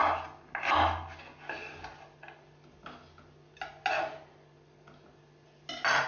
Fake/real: real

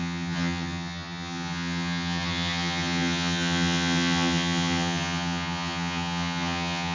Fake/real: fake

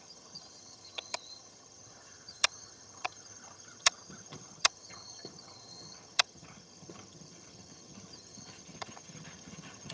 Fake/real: fake